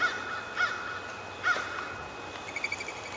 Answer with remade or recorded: recorded